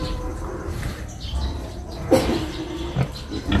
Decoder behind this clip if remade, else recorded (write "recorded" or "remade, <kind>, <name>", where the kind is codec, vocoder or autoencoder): recorded